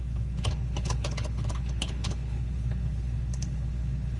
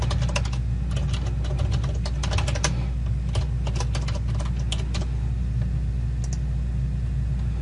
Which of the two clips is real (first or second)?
second